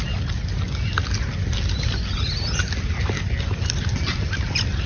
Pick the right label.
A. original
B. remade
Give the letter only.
A